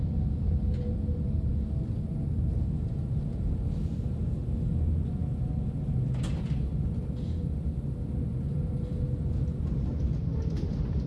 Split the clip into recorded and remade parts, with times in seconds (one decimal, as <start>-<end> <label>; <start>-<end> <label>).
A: 0.0-11.1 recorded